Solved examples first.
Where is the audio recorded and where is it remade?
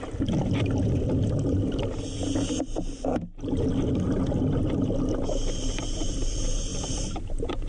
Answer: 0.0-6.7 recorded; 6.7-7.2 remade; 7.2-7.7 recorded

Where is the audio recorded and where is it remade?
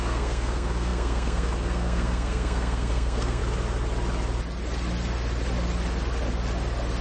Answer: 0.0-3.4 remade; 3.4-7.0 recorded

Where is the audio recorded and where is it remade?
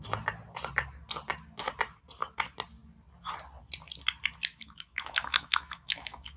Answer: 0.0-4.5 recorded; 4.5-6.4 remade